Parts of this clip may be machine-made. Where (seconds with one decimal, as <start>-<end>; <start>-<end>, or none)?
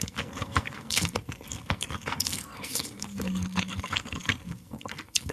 0.0-5.3